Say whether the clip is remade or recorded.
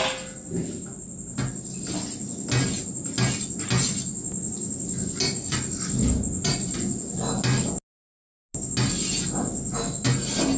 recorded